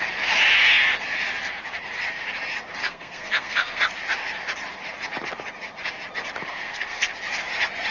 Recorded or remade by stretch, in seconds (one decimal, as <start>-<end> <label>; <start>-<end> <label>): 0.0-2.8 recorded; 2.8-3.8 remade; 3.8-6.5 recorded; 6.5-7.1 remade; 7.1-7.9 recorded